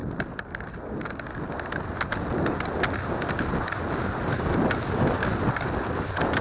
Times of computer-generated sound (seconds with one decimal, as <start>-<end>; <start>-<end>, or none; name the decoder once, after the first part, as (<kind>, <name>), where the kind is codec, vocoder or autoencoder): none